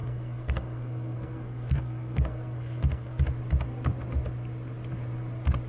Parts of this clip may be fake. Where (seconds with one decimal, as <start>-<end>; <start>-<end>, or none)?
0.0-3.2